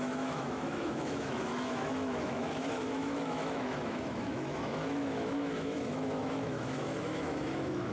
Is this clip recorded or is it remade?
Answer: remade